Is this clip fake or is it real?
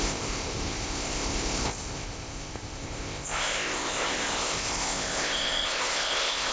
fake